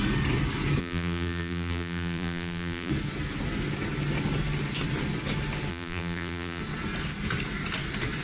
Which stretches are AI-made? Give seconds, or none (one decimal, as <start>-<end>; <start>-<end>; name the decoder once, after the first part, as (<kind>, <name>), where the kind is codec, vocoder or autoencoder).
0.8-2.9 (vocoder, BigVGAN v2); 5.7-6.6